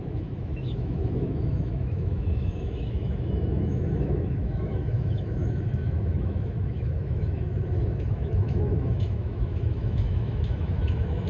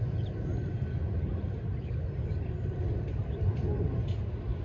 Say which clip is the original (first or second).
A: second